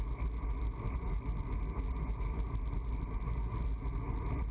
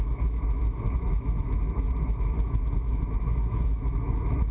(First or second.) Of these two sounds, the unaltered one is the first